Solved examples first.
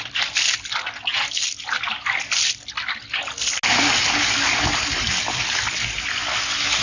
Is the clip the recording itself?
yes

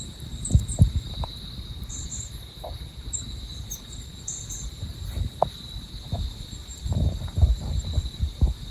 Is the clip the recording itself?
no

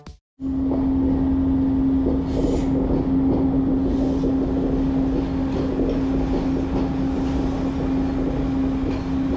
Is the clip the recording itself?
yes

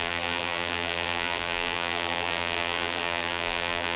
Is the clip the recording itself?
no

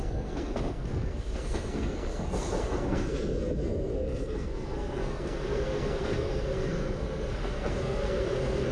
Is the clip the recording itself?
no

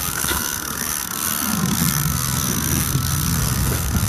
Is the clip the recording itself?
no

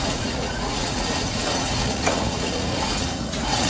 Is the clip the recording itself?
no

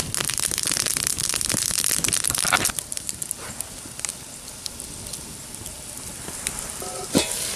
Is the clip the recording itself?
yes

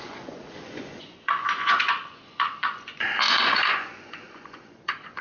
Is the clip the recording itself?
no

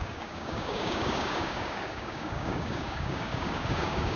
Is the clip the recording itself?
no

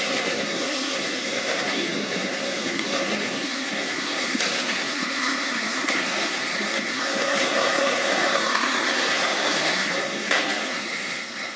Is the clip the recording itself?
no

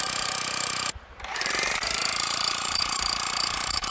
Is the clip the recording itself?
no